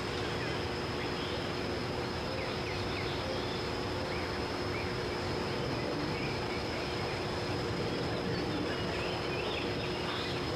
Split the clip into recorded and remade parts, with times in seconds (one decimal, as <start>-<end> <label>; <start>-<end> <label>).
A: 0.0-1.8 recorded; 1.8-3.3 remade; 3.3-10.6 recorded